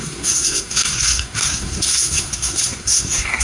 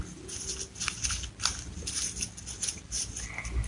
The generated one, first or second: first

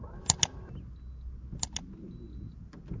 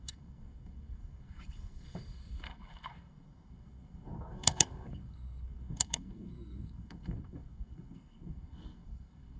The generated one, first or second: second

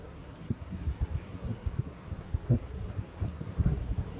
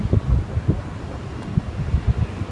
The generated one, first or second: first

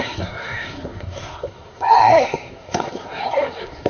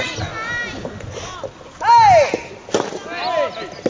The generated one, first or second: first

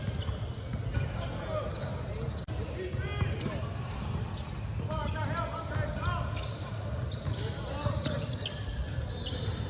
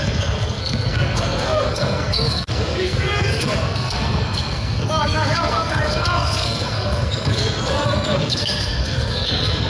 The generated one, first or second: second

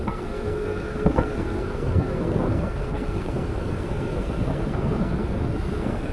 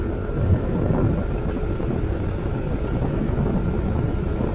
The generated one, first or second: first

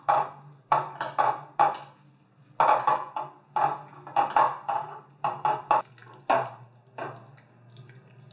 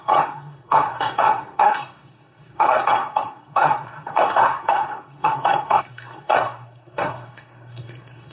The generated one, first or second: second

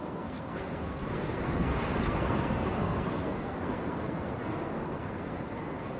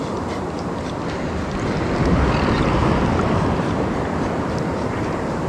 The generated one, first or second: first